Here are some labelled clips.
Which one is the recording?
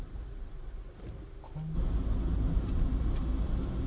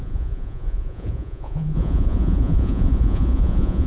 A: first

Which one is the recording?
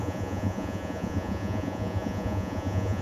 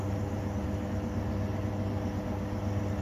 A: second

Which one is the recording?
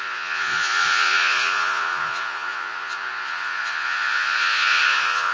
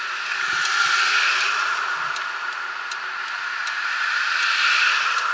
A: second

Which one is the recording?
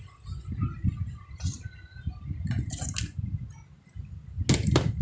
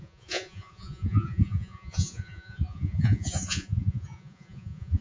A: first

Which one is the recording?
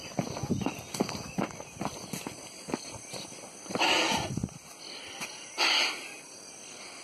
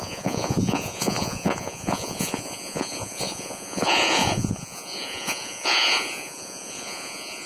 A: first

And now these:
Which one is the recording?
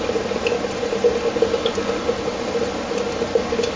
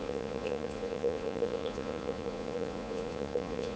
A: first